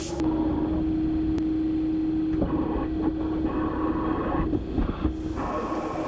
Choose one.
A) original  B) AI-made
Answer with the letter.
A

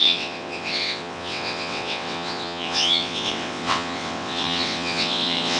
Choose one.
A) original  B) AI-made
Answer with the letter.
B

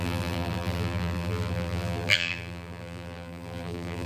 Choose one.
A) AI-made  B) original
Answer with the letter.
A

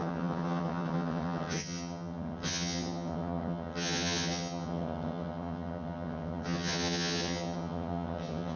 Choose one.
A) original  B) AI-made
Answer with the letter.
B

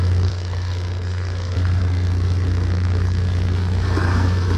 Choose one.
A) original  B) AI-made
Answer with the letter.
B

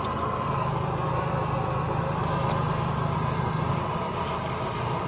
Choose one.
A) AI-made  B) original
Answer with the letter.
A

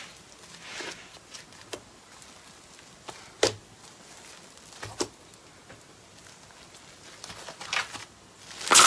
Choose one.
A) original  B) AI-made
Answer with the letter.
A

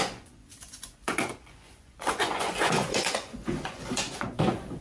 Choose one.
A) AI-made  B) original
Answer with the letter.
A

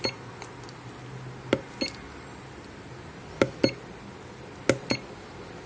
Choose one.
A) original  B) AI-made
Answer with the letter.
A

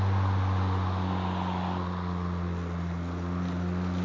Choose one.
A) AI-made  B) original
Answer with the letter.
B